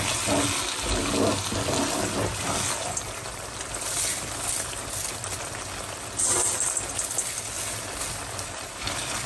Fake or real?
real